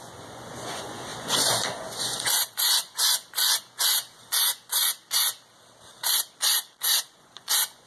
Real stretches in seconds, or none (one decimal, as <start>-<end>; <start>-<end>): 4.8-7.1